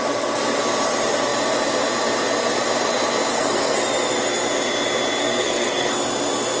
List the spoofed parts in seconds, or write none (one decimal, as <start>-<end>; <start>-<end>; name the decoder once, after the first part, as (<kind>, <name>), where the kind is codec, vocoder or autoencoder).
3.3-3.8 (codec, SNAC); 5.2-5.9